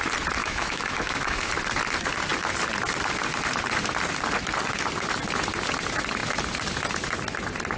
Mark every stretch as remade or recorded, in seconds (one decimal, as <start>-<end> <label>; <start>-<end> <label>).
0.0-0.4 recorded; 0.4-1.5 remade; 1.5-7.8 recorded